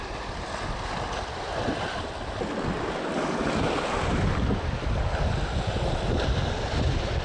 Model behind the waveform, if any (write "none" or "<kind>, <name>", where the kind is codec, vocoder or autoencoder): none